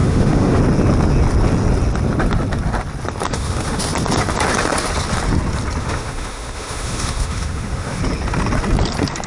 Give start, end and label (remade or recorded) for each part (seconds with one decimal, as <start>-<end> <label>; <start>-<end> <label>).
0.0-0.6 remade; 0.6-3.3 recorded; 3.3-3.8 remade; 3.8-5.8 recorded; 5.8-8.0 remade; 8.0-9.3 recorded